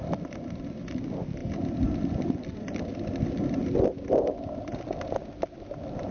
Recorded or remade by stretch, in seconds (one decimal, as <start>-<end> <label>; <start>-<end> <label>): 0.0-6.1 recorded